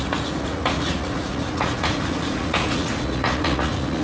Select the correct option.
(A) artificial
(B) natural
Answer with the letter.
A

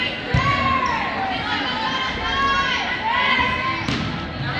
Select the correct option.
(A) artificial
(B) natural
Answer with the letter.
B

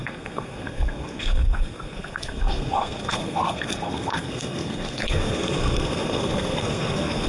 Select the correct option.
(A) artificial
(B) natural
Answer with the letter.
A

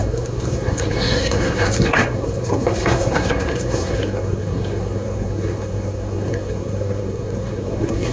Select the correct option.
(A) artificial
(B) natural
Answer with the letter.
A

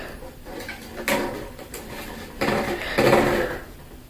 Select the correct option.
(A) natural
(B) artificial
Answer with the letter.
A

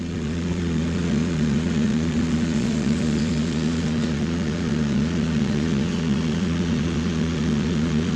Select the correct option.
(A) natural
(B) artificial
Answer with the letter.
B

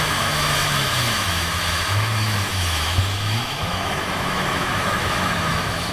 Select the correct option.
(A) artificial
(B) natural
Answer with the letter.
A